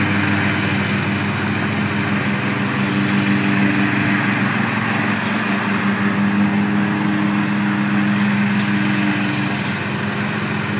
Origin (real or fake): real